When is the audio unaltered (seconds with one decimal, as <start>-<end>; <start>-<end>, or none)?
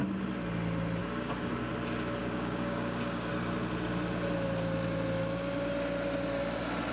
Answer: 0.0-1.0; 1.7-2.2; 3.3-6.9